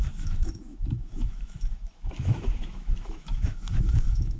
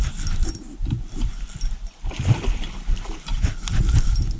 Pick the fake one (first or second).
first